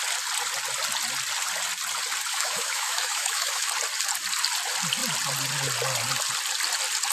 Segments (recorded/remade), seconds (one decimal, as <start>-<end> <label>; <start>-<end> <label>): 0.0-2.3 recorded; 2.3-3.7 remade; 3.7-7.1 recorded